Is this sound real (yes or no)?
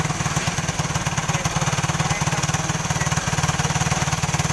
yes